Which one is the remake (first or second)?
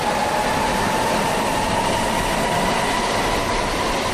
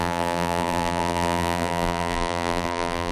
second